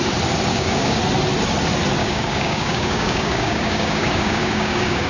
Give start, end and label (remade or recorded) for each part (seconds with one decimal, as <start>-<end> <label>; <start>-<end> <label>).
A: 0.0-0.5 recorded; 0.5-1.0 remade; 1.0-2.0 recorded; 2.0-5.1 remade